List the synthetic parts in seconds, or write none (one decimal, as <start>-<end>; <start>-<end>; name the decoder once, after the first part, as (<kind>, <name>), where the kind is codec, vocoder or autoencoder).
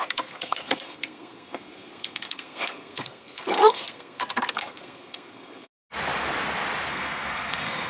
0.0-5.7 (codec, SNAC); 6.9-7.9